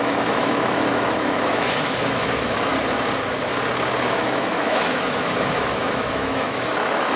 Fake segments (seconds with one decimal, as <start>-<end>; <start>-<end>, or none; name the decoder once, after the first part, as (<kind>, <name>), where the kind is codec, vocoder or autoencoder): 0.0-2.7 (autoencoder, DAC-VAE); 4.1-7.2